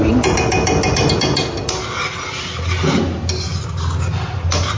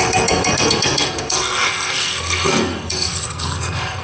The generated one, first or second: second